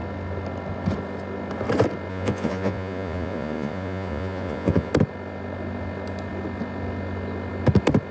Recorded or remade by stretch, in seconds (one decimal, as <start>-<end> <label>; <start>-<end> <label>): 0.0-2.1 recorded; 2.1-4.9 remade; 4.9-8.1 recorded